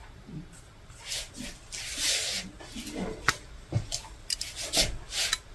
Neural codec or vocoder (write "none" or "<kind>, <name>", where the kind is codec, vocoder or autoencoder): none